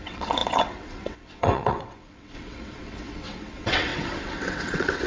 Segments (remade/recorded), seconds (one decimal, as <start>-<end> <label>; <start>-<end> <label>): 0.0-5.1 remade